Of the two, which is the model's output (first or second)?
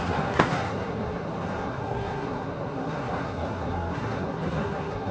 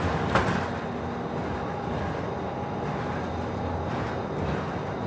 first